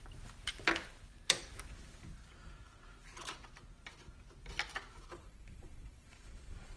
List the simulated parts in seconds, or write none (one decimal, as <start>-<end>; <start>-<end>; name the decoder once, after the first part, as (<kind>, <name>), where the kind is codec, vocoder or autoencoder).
5.1-6.8 (vocoder, Vocos)